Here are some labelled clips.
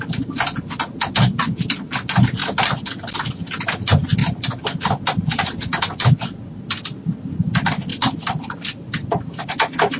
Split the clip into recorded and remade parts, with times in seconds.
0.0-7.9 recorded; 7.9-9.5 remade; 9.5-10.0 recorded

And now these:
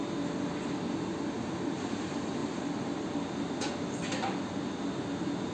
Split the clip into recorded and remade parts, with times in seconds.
0.0-2.4 recorded; 2.4-3.7 remade; 3.7-5.5 recorded

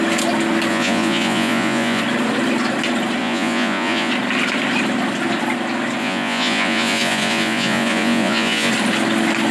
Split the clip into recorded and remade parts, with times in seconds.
0.0-0.7 recorded; 0.7-2.0 remade; 2.0-3.2 recorded; 3.2-4.1 remade; 4.1-6.0 recorded; 6.0-8.7 remade; 8.7-9.5 recorded

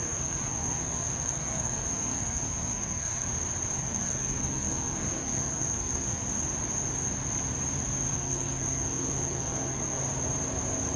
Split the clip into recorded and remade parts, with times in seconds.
0.0-3.3 remade; 3.3-3.8 recorded; 3.8-6.3 remade; 6.3-8.1 recorded; 8.1-10.0 remade; 10.0-11.0 recorded